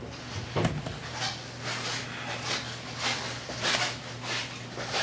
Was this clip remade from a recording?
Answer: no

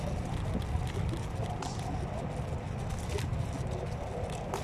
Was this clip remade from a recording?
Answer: no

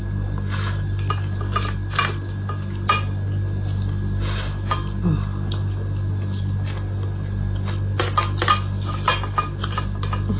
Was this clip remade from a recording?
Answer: no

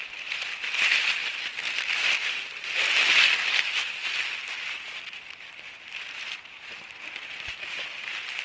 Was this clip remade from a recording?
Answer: no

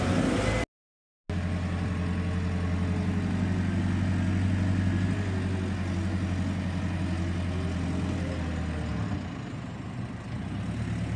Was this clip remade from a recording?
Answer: no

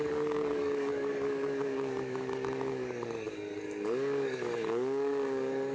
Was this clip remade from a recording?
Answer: yes